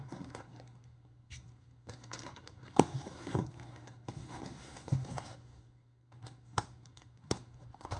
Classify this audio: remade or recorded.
remade